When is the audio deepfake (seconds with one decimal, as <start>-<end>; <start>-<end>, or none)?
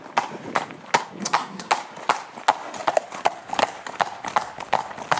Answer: 1.2-1.7